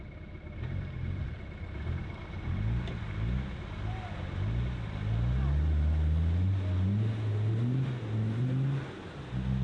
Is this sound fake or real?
real